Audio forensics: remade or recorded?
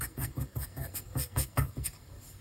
remade